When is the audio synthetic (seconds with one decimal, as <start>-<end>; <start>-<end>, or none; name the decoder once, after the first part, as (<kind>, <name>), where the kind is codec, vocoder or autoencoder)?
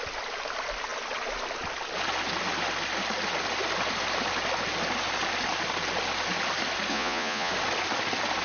6.9-7.5 (vocoder, Vocos)